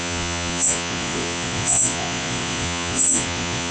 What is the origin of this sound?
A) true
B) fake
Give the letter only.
B